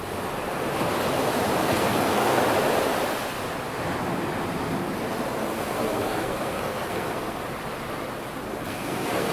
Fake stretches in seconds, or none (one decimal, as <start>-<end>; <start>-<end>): 1.6-2.4; 5.5-7.4; 8.5-9.3